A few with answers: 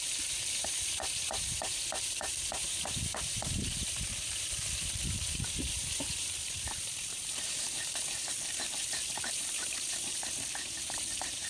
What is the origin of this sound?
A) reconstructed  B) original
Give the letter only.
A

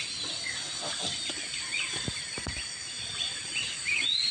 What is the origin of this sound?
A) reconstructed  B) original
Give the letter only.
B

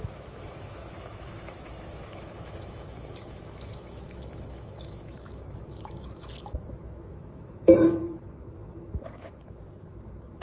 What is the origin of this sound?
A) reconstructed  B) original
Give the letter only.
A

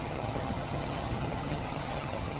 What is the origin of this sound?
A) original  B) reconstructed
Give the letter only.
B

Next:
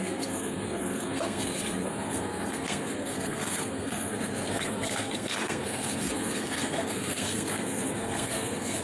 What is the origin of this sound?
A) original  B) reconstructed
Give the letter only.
B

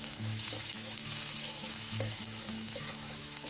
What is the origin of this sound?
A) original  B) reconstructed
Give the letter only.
B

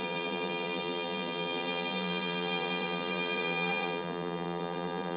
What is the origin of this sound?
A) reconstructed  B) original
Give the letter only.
A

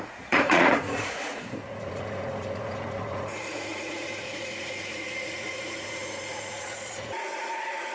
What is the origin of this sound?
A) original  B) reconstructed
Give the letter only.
B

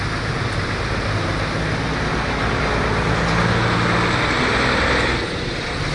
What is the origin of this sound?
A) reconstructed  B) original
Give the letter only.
B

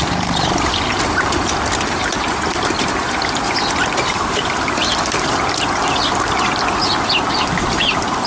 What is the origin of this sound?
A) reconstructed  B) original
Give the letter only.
B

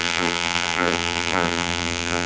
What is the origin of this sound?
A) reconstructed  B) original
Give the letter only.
A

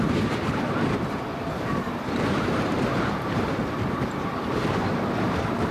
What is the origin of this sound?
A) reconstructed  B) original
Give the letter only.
A